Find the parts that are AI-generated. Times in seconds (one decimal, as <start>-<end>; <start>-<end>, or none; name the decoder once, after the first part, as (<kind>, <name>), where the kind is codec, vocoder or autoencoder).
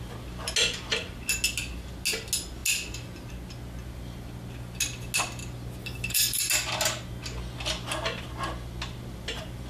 5.8-6.4 (codec, DAC)